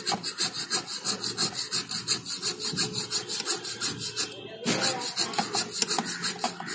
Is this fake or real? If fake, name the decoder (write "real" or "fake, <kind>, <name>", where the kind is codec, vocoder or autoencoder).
real